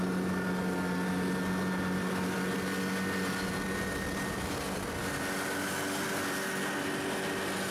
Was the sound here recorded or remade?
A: recorded